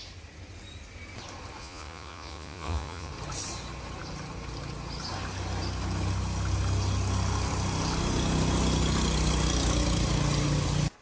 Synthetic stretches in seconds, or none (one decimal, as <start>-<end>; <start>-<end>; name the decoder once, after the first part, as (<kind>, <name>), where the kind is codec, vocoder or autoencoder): 1.6-3.1 (vocoder, Vocos)